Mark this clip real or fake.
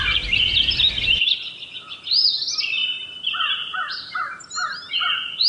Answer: real